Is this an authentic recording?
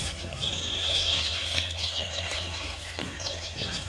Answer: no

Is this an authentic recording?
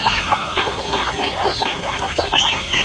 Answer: no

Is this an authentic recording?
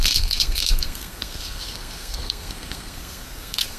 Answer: no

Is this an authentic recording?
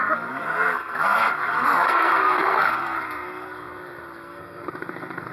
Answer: no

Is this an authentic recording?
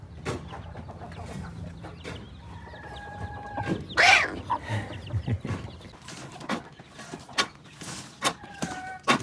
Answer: yes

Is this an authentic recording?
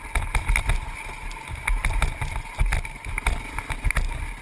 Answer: yes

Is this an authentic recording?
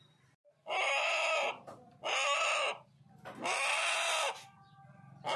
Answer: yes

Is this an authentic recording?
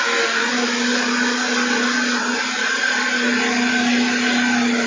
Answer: yes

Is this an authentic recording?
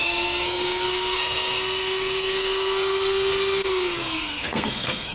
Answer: no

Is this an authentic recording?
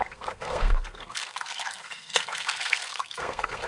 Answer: no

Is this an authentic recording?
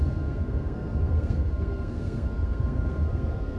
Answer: no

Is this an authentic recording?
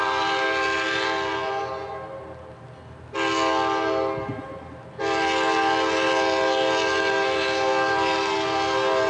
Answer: yes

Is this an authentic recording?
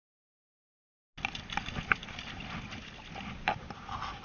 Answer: yes